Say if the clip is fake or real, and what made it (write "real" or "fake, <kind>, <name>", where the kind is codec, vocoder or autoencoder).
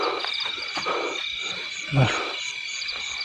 real